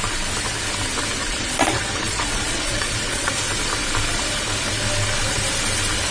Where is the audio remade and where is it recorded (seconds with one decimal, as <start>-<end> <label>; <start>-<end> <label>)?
0.0-1.2 recorded; 1.2-3.3 remade; 3.3-6.1 recorded